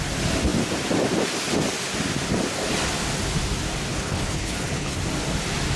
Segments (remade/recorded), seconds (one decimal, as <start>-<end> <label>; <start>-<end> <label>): 0.0-3.9 recorded; 3.9-5.0 remade; 5.0-5.8 recorded